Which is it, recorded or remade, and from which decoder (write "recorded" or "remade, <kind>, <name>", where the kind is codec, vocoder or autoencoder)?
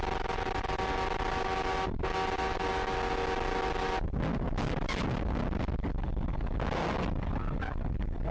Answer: recorded